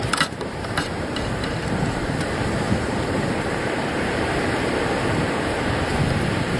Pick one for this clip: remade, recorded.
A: remade